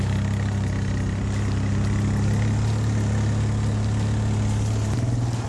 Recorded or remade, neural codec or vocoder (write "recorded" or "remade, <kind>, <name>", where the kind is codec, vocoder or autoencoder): recorded